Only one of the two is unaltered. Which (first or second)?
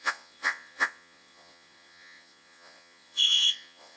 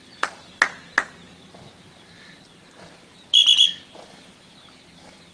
second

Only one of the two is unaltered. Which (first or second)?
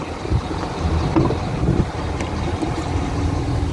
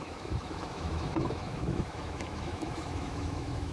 first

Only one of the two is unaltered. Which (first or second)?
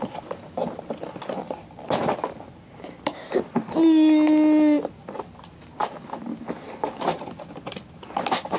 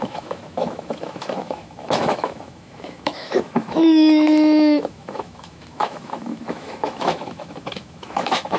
first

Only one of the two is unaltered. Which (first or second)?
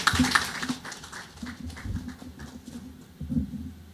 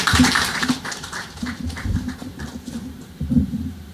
first